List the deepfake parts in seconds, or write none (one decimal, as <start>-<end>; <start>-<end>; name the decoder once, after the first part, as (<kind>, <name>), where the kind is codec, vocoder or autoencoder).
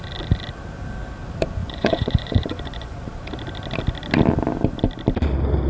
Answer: 1.6-3.0 (vocoder, Vocos)